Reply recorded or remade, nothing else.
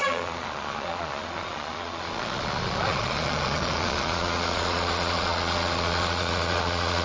remade